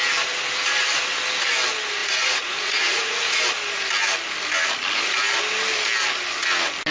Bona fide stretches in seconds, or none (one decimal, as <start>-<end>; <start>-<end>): 0.0-2.0; 3.4-6.9

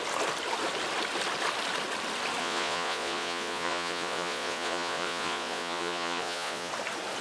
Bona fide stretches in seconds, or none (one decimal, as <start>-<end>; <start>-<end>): 0.0-2.4; 6.7-7.2

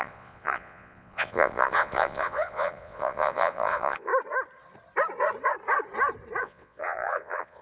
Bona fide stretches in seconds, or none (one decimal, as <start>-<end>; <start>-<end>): 4.1-6.4

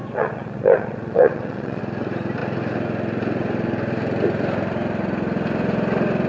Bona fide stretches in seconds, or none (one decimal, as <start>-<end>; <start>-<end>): 1.8-6.3

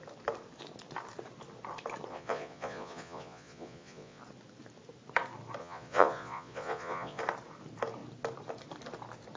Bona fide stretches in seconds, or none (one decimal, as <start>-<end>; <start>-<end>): 0.0-2.1; 4.2-5.6; 7.2-9.4

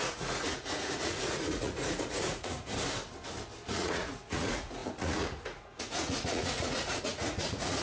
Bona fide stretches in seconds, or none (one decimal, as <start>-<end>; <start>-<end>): 2.6-3.7

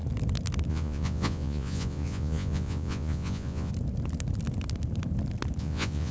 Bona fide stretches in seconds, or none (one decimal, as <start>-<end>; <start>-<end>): 0.0-0.7; 3.7-5.6